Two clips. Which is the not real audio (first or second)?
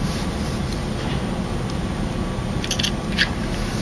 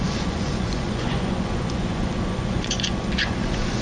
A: second